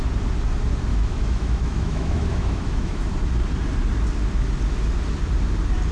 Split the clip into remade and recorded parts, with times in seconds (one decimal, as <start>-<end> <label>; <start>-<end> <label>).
0.0-0.9 recorded; 0.9-3.0 remade; 3.0-5.9 recorded